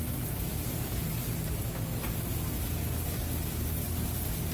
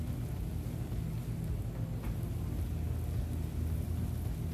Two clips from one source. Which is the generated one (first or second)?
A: first